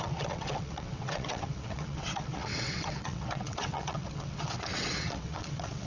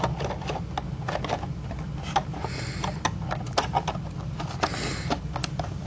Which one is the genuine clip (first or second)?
second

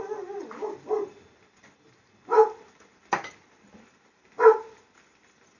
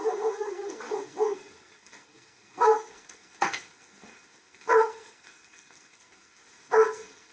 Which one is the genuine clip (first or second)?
first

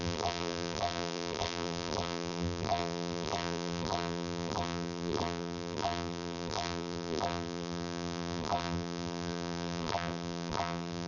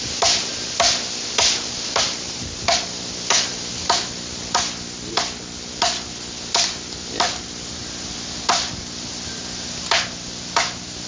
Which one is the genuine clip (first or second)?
second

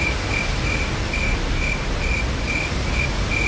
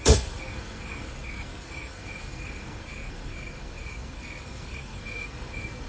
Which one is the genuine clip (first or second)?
first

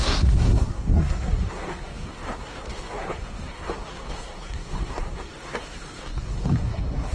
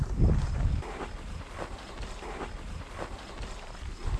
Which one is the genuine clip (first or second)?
second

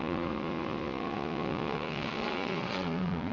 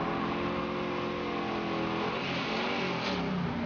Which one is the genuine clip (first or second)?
second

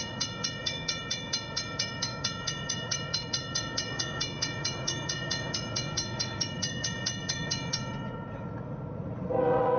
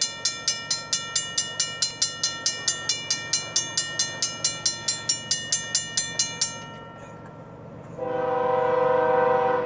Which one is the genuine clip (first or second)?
second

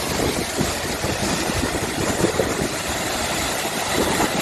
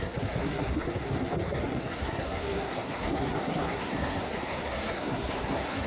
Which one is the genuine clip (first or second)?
first